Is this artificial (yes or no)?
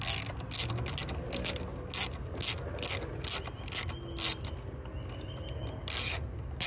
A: no